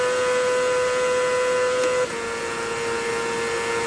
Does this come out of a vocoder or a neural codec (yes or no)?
no